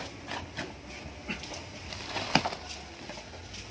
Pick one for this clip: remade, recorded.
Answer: recorded